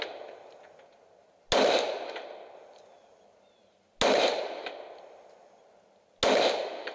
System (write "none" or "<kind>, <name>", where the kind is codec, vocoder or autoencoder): none